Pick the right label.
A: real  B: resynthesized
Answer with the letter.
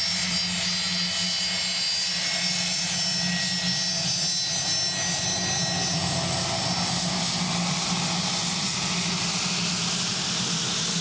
A